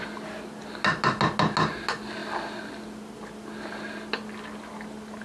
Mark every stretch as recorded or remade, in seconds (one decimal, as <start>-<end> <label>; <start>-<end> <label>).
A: 0.0-5.2 recorded